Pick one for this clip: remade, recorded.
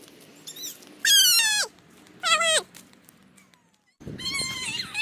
recorded